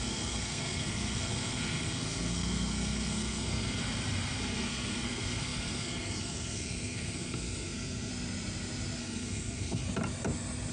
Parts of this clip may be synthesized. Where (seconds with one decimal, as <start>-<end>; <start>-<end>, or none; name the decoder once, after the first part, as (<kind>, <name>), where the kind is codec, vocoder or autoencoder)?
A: 0.0-3.8 (codec, SNAC); 4.4-8.1; 9.0-9.8